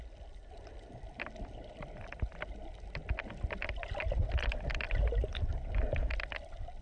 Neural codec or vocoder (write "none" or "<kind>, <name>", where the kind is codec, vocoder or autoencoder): none